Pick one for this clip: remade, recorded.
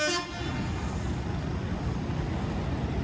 recorded